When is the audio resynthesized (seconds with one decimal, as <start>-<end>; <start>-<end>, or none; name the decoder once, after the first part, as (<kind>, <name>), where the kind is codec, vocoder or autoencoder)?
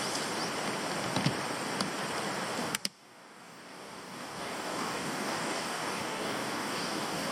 2.6-7.3 (codec, DAC)